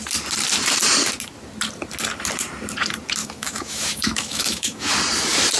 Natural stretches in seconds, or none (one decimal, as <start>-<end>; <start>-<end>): 0.0-3.2; 4.9-5.6